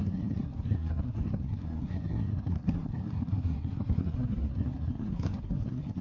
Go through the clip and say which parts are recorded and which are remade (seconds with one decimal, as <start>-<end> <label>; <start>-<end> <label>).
0.0-6.0 remade